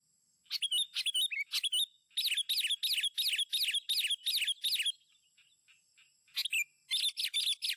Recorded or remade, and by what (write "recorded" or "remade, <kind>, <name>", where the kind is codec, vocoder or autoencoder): recorded